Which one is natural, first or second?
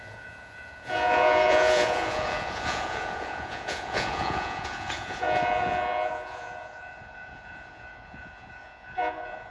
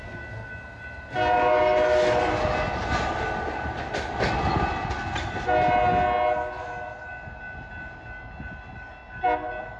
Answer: second